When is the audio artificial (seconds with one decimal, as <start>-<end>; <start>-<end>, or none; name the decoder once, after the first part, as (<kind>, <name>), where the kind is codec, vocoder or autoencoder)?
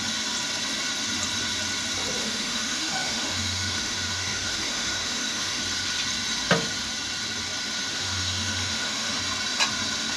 2.2-5.6 (autoencoder, DAC-VAE); 7.9-9.2